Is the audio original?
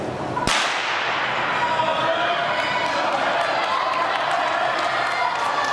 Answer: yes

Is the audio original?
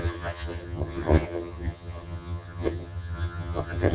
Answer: no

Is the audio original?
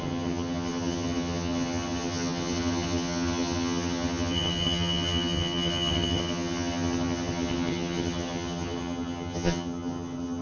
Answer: no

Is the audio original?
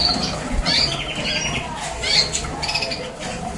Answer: yes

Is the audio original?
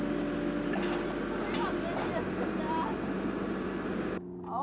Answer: yes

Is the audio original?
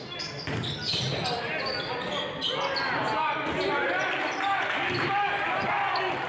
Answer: yes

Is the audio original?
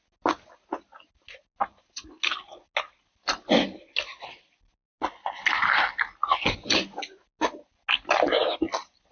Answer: yes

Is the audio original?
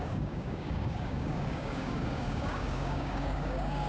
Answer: no